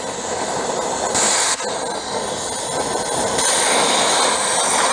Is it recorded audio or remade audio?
recorded